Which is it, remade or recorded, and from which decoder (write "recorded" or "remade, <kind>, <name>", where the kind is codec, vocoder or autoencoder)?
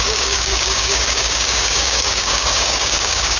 remade, codec, DAC